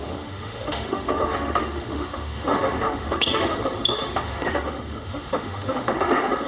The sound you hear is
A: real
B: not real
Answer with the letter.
B